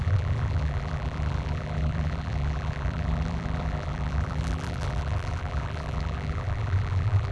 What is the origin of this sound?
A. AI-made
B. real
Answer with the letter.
A